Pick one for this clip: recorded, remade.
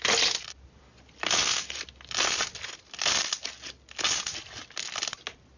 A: recorded